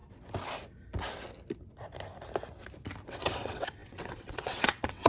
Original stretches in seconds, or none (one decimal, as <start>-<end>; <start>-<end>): 0.0-3.1